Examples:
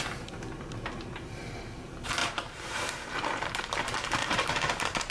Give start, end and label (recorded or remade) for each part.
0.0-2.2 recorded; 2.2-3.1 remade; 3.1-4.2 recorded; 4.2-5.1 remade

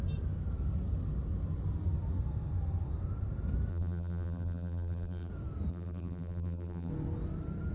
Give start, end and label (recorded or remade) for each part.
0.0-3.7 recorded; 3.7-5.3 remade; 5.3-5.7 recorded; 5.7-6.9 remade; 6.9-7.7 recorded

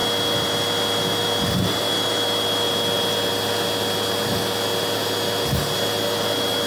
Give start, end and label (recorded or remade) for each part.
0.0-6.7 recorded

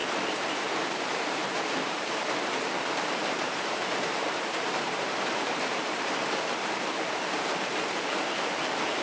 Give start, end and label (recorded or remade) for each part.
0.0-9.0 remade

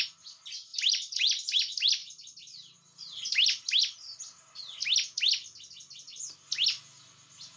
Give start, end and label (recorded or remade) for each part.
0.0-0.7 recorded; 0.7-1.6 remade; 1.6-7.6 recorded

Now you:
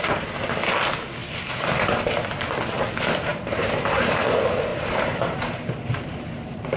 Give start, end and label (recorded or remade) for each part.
0.0-1.2 recorded; 1.2-2.3 remade; 2.3-3.3 recorded; 3.3-4.2 remade; 4.2-4.7 recorded; 4.7-6.8 remade

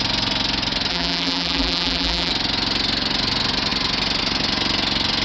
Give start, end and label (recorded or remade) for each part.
0.0-0.9 recorded; 0.9-2.3 remade; 2.3-5.2 recorded

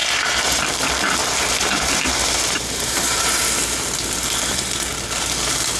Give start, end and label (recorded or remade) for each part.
0.0-0.6 remade; 0.6-1.2 recorded; 1.2-3.6 remade; 3.6-5.8 recorded